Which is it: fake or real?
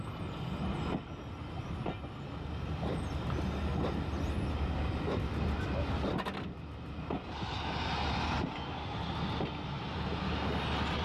real